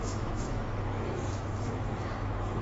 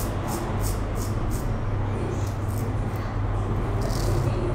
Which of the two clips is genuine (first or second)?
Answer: second